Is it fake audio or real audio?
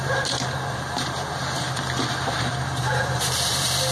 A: fake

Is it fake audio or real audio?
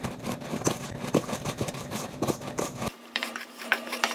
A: fake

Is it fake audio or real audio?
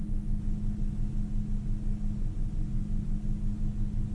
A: real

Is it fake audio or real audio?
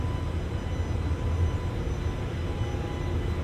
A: real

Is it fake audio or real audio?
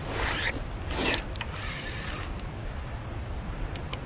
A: real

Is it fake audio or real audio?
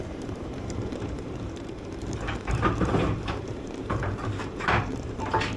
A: fake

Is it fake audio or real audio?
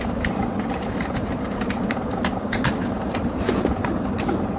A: real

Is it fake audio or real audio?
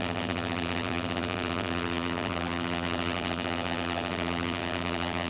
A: fake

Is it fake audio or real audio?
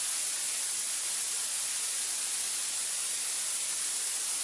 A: real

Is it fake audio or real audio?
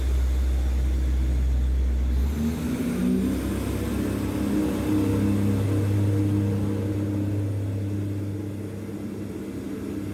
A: real